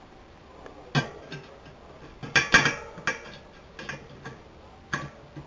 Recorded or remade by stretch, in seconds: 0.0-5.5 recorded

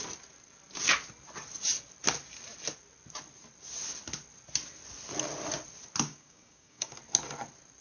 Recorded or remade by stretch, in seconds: 0.0-6.1 recorded; 6.1-6.9 remade; 6.9-7.8 recorded

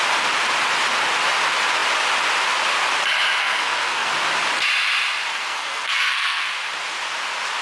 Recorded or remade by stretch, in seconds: 0.0-3.4 recorded; 3.4-4.1 remade; 4.1-5.3 recorded; 5.3-6.5 remade; 6.5-7.6 recorded